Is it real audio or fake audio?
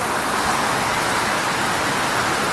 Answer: real